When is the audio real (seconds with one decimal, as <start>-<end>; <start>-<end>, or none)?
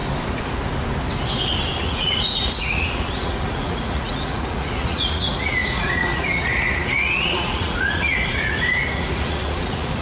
0.0-1.8